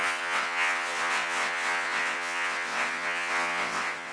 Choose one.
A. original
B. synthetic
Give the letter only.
B